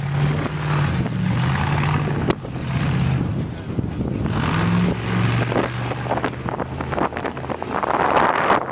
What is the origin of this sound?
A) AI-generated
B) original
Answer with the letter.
B